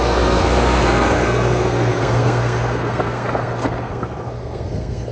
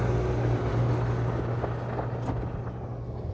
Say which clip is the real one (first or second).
second